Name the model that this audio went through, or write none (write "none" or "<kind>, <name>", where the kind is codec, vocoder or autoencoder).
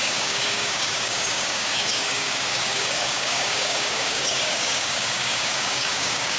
codec, DAC